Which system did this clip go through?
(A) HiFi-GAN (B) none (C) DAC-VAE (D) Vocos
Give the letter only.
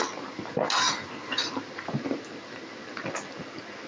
B